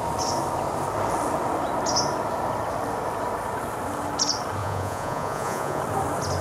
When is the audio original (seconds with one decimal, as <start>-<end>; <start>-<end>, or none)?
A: 0.0-4.6; 5.8-6.4